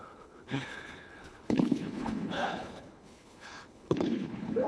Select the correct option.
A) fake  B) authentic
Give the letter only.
A